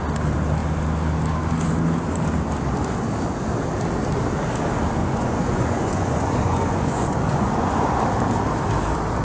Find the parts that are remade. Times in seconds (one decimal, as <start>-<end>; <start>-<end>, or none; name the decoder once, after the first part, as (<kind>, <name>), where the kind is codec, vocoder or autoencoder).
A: 5.0-8.0 (vocoder, Vocos)